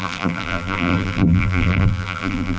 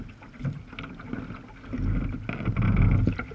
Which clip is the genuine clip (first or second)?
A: second